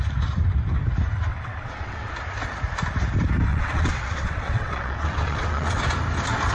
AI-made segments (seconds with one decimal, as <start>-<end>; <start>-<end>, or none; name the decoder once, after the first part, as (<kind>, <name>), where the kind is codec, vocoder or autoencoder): 1.3-2.1 (vocoder, WaveNeXt); 3.5-5.8